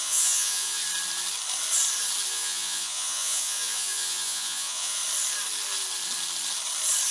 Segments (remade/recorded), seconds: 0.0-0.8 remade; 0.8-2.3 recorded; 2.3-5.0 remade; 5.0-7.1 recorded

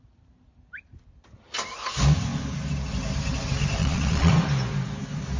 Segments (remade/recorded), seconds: 0.0-3.8 recorded; 3.8-4.3 remade; 4.3-5.4 recorded

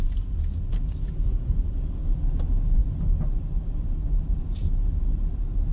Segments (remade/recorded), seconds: 0.0-5.7 recorded

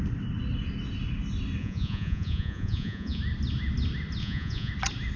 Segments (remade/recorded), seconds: 0.0-1.6 recorded; 1.6-3.2 remade; 3.2-4.2 recorded; 4.2-4.7 remade; 4.7-5.2 recorded